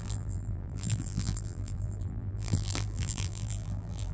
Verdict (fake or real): fake